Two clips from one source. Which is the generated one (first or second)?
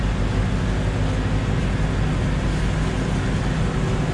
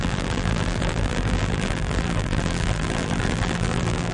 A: second